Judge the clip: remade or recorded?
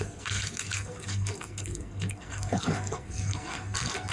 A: remade